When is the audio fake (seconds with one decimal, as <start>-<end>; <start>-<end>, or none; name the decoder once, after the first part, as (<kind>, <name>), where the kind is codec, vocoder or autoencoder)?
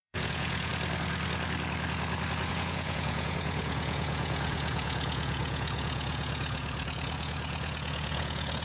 0.0-0.7 (vocoder, Vocos); 2.5-8.6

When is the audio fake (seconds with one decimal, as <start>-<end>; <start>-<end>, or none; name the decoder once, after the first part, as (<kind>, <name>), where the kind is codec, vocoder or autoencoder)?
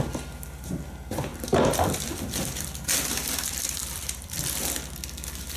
1.3-4.4 (vocoder, BigVGAN v2)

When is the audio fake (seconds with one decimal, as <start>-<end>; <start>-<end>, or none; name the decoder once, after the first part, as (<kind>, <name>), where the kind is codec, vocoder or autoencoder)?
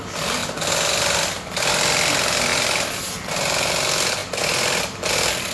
none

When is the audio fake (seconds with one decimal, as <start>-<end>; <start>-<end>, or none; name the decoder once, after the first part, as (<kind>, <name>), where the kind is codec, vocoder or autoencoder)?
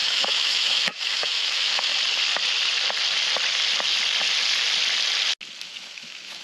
0.0-1.9 (autoencoder, DAC-VAE); 5.6-6.4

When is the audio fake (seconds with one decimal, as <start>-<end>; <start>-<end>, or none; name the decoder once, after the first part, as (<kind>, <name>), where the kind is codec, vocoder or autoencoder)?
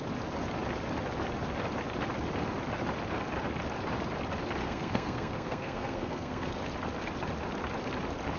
4.6-6.5 (codec, SNAC)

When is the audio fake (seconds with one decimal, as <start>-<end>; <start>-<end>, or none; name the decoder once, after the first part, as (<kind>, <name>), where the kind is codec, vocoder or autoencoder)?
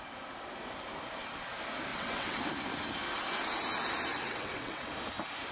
1.9-2.4 (vocoder, WaveNeXt); 4.1-4.9